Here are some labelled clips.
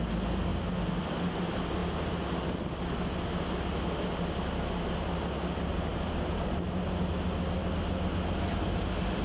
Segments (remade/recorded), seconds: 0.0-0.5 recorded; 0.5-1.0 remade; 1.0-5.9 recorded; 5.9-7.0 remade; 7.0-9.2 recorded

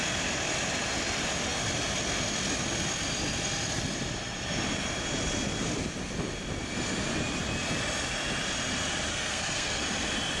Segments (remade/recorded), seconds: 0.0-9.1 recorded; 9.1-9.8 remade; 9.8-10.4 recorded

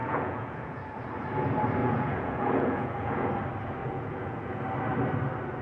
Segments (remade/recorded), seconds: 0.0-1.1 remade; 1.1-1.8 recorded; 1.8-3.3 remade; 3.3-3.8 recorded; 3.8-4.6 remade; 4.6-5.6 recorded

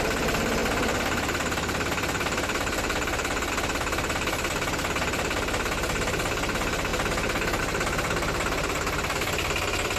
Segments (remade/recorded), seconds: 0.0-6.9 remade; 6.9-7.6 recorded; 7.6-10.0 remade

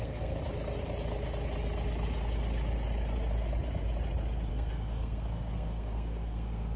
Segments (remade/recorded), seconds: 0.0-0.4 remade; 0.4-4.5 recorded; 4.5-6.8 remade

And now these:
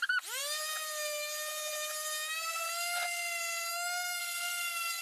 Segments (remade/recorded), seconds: 0.0-3.7 recorded; 3.7-4.2 remade; 4.2-5.0 recorded

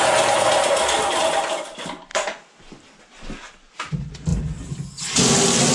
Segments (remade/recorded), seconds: 0.0-5.7 recorded